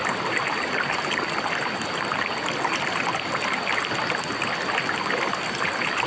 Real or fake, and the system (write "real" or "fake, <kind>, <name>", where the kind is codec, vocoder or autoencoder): real